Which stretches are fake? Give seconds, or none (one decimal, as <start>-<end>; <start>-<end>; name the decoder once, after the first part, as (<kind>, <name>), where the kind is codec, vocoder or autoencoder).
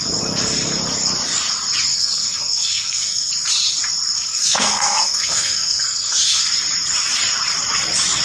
1.9-3.3 (codec, SNAC); 4.3-6.4